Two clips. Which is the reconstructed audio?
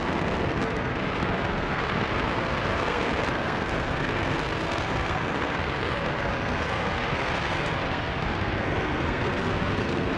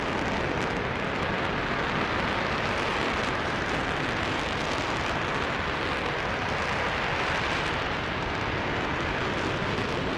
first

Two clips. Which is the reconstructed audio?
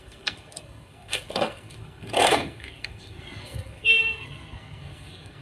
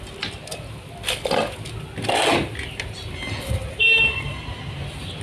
first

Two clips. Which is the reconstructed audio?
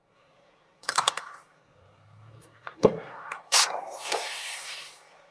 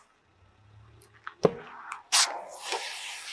first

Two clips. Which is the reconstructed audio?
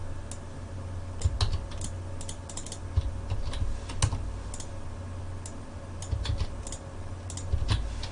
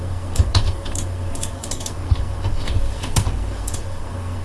second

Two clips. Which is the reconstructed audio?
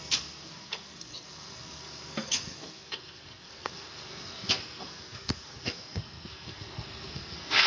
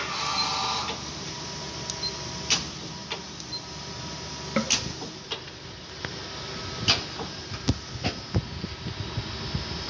first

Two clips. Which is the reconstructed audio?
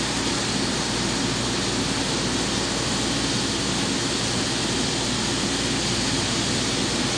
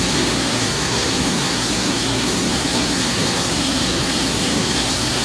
second